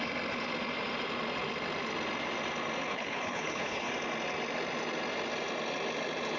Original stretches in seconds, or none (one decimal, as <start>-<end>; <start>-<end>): 0.0-2.9; 3.9-6.4